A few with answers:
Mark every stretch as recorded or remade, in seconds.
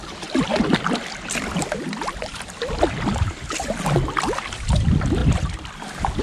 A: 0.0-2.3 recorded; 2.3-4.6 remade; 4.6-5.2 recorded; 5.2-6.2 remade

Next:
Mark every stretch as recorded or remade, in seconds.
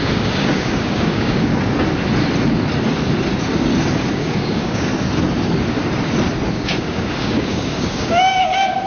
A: 0.0-1.5 remade; 1.5-4.1 recorded; 4.1-4.9 remade; 4.9-6.5 recorded; 6.5-8.9 remade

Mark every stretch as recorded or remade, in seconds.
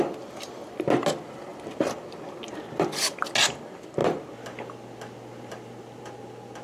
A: 0.0-1.5 recorded; 1.5-2.4 remade; 2.4-6.6 recorded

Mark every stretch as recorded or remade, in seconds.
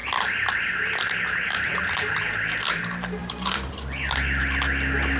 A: 0.0-1.7 remade; 1.7-3.2 recorded; 3.2-4.4 remade; 4.4-5.2 recorded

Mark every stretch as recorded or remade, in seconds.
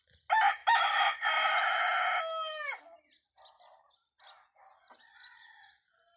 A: 0.0-6.2 recorded